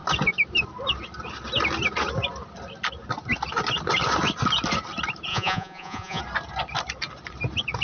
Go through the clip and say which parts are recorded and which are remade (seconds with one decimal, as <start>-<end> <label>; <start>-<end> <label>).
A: 0.0-5.3 recorded; 5.3-6.2 remade; 6.2-7.8 recorded